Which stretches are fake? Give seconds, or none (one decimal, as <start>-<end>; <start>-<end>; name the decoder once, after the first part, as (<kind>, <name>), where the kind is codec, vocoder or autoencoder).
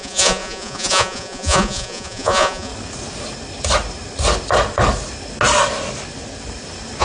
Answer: 0.0-2.7 (vocoder, Vocos)